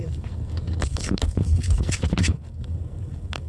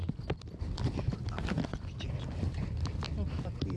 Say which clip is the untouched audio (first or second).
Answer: second